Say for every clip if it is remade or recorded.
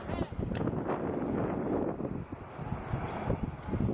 recorded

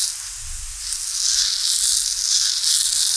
recorded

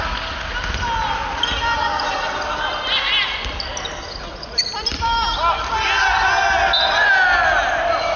recorded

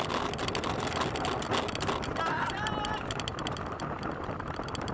recorded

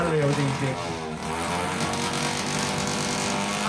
recorded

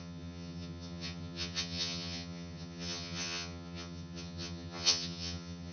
remade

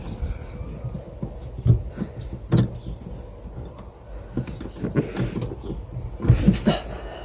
recorded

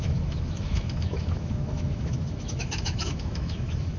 remade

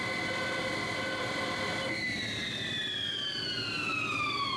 recorded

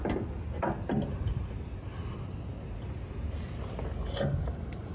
recorded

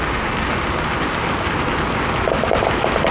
recorded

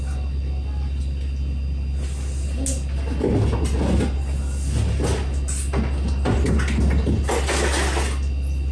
recorded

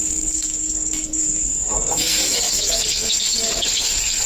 remade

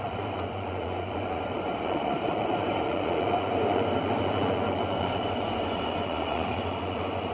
remade